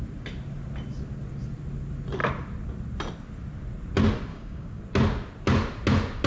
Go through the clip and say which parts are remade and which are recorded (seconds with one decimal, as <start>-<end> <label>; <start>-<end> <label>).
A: 0.0-4.3 recorded; 4.3-4.8 remade; 4.8-6.3 recorded